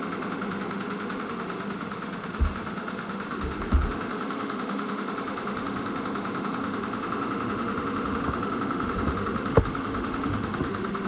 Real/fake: fake